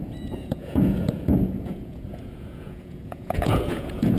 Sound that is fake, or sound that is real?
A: fake